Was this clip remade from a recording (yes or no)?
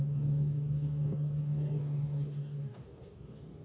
yes